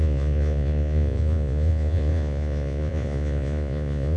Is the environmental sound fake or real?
fake